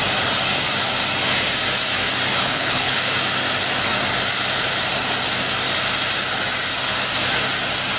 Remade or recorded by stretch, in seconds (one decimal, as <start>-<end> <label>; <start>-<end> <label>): 0.0-2.4 recorded; 2.4-3.1 remade; 3.1-8.0 recorded